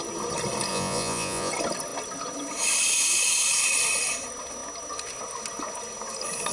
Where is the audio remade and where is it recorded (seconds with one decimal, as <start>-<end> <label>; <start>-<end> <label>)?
0.0-0.7 recorded; 0.7-1.5 remade; 1.5-6.5 recorded